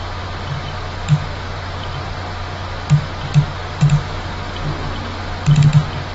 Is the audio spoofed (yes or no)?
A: no